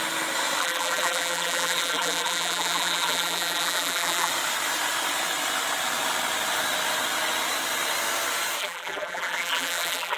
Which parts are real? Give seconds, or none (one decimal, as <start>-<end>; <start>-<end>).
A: 0.0-0.6; 4.3-8.6